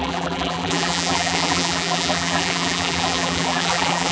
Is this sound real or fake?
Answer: fake